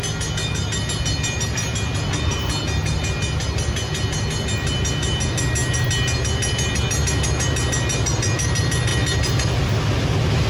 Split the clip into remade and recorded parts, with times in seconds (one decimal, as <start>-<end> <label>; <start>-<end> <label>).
0.0-10.5 recorded